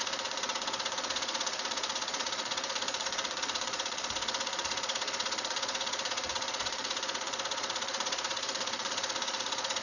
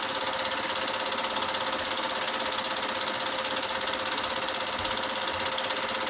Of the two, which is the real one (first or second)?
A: second